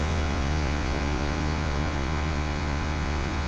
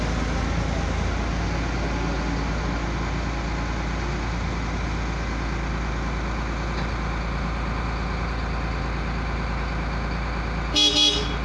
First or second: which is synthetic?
first